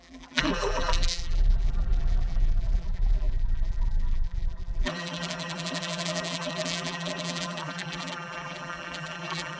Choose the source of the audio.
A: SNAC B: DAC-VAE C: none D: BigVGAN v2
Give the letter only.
D